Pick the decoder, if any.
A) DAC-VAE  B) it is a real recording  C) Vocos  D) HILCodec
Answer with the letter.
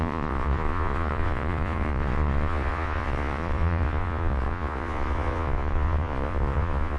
C